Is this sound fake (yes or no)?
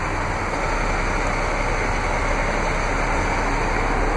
no